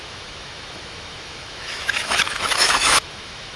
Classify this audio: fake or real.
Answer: fake